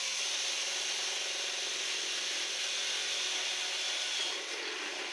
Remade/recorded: recorded